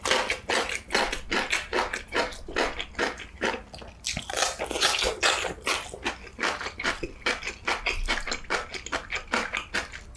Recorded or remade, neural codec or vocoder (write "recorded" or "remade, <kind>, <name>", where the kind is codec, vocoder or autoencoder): recorded